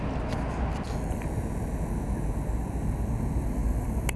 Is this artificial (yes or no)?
no